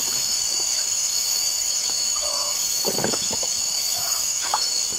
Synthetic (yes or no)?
yes